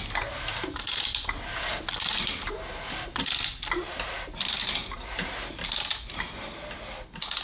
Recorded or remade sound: recorded